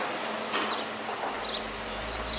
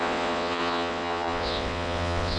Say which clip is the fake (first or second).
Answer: second